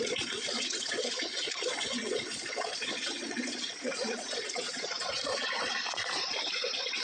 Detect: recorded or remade remade